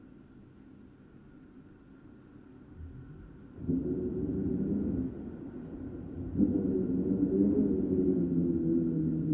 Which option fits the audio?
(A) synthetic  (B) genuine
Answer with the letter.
B